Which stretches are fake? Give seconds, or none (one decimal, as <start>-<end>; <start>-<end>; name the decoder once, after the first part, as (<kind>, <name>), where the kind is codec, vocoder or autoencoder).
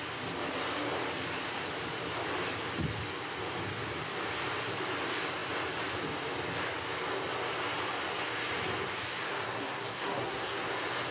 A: 9.2-10.7 (codec, SNAC)